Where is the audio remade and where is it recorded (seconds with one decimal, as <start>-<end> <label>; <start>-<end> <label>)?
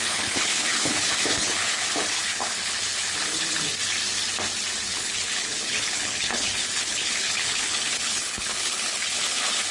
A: 0.0-3.7 remade; 3.7-4.9 recorded; 4.9-9.7 remade